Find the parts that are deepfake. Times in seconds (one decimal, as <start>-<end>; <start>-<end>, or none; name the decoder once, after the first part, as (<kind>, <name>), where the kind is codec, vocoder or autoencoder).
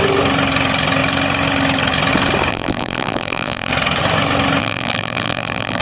2.5-3.7 (vocoder, BigVGAN v2); 4.6-5.8